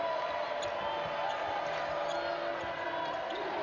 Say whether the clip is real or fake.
real